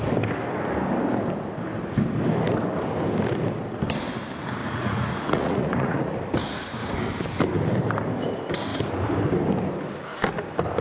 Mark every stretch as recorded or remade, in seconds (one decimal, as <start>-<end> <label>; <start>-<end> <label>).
0.0-4.6 recorded; 4.6-6.1 remade; 6.1-10.8 recorded